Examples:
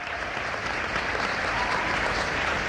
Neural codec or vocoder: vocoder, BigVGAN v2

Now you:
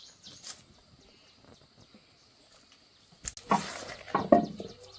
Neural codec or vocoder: none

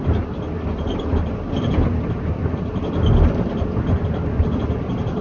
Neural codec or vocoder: vocoder, BigVGAN v2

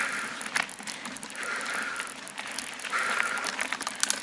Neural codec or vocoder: none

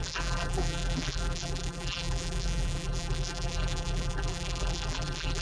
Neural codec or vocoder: vocoder, BigVGAN v2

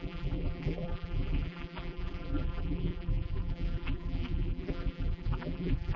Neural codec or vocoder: vocoder, BigVGAN v2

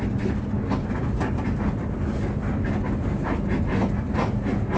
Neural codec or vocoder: none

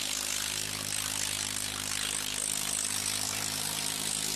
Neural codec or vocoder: vocoder, BigVGAN v2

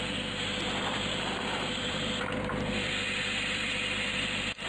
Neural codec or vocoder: vocoder, BigVGAN v2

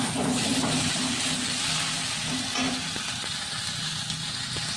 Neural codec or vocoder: none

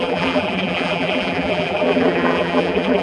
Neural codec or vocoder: vocoder, BigVGAN v2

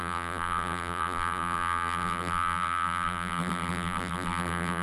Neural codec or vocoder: vocoder, BigVGAN v2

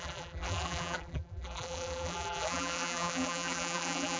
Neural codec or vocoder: vocoder, BigVGAN v2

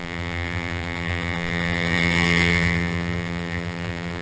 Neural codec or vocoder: vocoder, BigVGAN v2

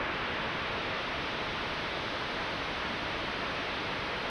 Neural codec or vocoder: none